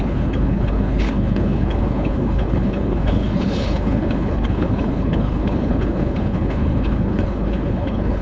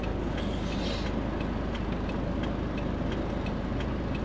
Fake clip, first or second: first